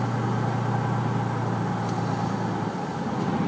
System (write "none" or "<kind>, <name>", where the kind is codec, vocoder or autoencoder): none